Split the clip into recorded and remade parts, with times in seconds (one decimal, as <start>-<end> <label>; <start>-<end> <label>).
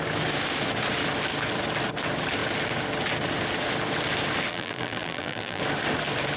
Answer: 0.0-4.5 recorded; 4.5-5.6 remade; 5.6-6.4 recorded